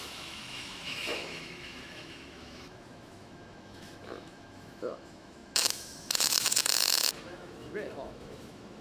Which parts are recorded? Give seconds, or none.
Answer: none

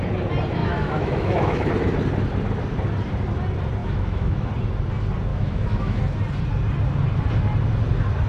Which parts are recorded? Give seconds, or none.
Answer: 0.0-0.6; 1.7-3.8; 4.5-5.3; 6.0-8.3

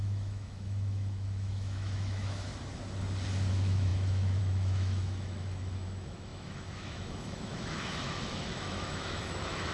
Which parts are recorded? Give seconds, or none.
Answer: 2.5-3.5

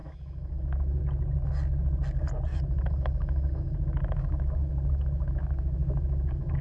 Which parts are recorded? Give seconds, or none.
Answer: 1.0-2.5

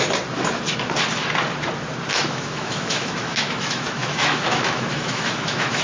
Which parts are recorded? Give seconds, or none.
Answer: 0.0-2.1

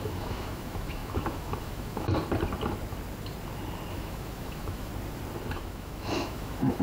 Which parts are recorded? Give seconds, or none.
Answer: 2.1-3.9; 4.9-5.5

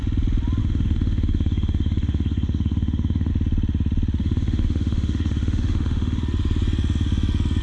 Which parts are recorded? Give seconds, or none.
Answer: 0.0-0.6; 3.3-4.2; 6.2-7.6